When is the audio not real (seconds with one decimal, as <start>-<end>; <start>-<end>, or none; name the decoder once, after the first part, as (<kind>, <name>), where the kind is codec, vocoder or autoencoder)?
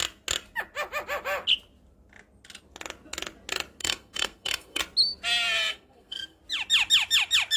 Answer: 3.8-4.8 (codec, SNAC); 5.7-6.4